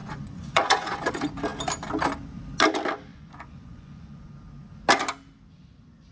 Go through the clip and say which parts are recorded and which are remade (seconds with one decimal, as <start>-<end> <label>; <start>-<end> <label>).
0.0-1.1 remade; 1.1-3.1 recorded; 3.1-4.3 remade; 4.3-6.1 recorded